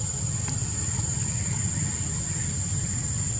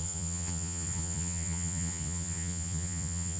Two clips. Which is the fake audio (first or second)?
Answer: second